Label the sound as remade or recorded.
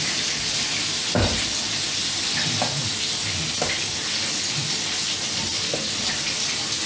recorded